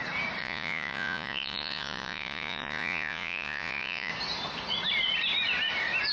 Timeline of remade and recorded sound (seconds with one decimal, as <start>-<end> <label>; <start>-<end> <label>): 0.0-0.4 recorded; 0.4-4.1 remade; 4.1-6.1 recorded